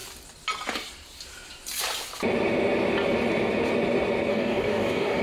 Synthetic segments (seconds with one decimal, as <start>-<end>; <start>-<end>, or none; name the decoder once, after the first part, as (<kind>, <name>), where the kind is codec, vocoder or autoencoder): 4.3-5.2 (codec, DAC)